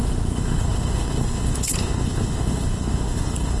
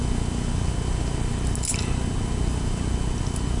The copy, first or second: first